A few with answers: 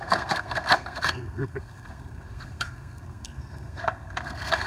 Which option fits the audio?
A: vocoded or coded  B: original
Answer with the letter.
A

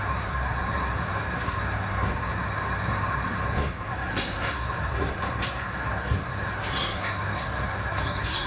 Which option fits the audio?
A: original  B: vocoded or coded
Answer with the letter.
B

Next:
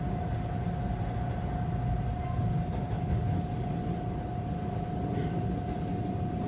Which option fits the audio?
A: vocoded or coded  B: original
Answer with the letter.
B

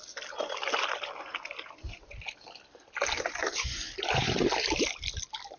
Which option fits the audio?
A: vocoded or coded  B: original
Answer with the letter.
B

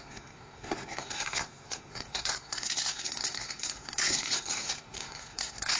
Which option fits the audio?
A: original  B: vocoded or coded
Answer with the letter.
B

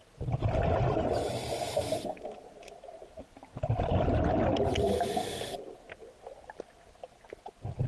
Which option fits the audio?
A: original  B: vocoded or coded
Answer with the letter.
A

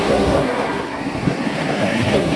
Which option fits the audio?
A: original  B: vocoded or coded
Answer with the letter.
B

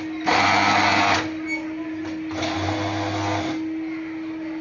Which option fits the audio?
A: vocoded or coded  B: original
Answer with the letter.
B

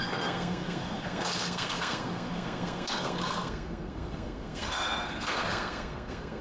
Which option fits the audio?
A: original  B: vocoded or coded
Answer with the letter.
B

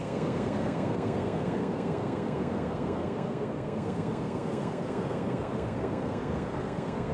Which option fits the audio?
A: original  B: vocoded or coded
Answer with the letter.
B